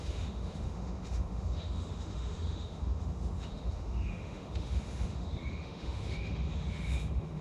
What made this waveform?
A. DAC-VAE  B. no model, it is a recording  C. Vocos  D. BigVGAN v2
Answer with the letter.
A